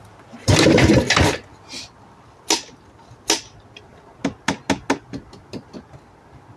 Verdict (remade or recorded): recorded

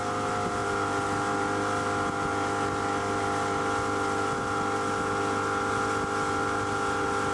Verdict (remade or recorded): recorded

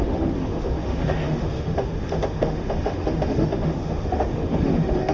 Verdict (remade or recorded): remade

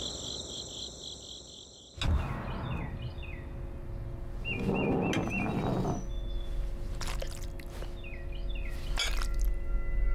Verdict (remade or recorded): recorded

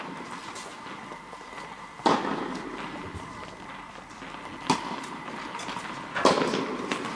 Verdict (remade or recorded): recorded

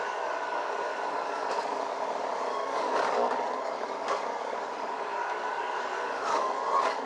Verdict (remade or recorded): remade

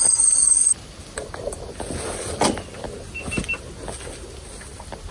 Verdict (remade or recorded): recorded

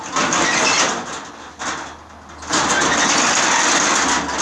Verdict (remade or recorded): recorded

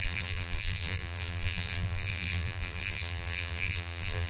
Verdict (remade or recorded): remade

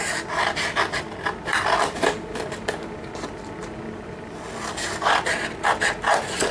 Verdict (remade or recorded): recorded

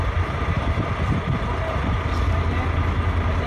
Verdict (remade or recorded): recorded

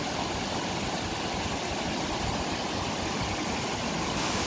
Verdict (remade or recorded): recorded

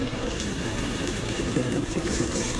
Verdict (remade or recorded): remade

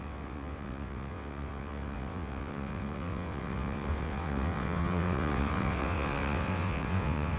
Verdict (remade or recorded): remade